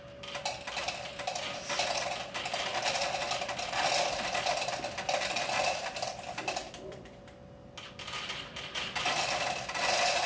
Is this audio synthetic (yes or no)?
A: no